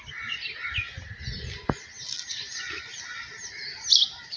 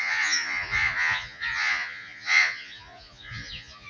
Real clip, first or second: first